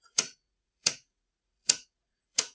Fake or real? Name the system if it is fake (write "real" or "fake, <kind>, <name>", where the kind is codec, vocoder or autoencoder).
fake, vocoder, Vocos